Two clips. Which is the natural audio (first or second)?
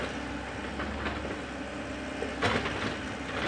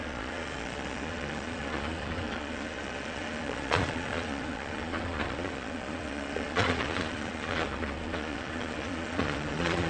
first